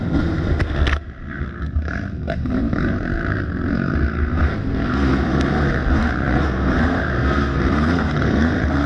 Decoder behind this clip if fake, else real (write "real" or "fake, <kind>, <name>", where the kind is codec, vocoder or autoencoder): fake, codec, SNAC